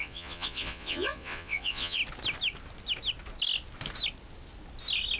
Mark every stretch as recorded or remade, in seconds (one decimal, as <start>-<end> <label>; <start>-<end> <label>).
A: 0.0-2.0 remade; 2.0-5.2 recorded